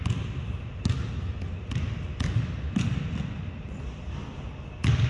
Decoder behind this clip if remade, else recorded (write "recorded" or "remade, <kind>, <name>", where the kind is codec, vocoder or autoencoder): recorded